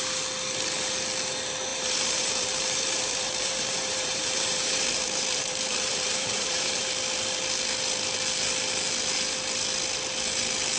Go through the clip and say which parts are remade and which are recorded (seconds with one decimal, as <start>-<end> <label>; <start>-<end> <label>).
0.0-1.7 recorded; 1.7-6.9 remade; 6.9-10.8 recorded